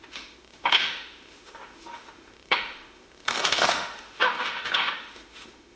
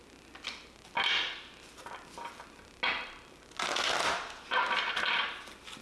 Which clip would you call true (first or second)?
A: second